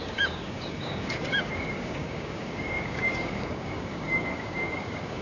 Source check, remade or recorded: remade